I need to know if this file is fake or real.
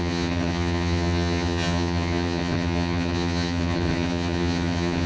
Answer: fake